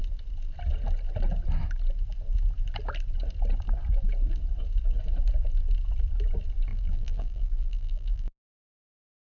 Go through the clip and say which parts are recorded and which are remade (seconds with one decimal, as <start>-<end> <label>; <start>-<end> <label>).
0.0-6.7 recorded; 6.7-9.3 remade

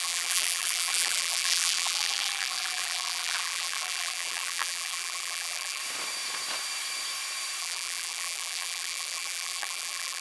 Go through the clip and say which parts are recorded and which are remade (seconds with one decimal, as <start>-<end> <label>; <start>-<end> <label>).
0.0-5.8 remade; 5.8-7.6 recorded; 7.6-10.2 remade

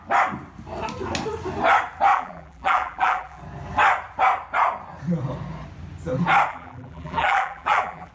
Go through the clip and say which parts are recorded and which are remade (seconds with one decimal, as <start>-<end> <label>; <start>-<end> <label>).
0.0-2.1 recorded; 2.1-3.4 remade; 3.4-6.5 recorded; 6.5-8.1 remade

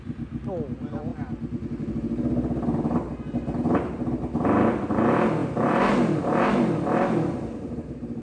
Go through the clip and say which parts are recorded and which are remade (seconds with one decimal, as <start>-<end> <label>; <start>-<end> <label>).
0.0-5.4 recorded; 5.4-6.5 remade; 6.5-8.2 recorded

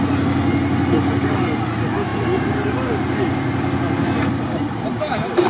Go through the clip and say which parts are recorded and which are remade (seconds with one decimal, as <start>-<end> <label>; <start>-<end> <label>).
0.0-2.1 recorded; 2.1-4.2 remade; 4.2-5.5 recorded